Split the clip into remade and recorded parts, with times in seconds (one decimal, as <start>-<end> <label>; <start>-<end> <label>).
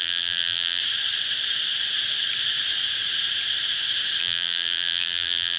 0.0-0.8 remade; 0.8-4.2 recorded; 4.2-5.6 remade